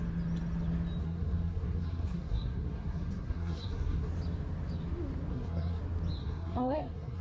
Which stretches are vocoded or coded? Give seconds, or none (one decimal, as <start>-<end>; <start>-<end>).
1.0-4.1; 5.3-5.8; 6.2-7.2